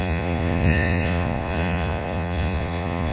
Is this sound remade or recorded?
remade